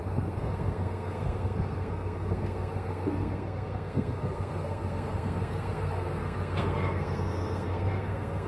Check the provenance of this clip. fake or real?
fake